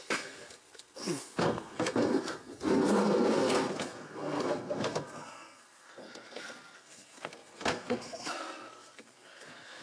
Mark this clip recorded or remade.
remade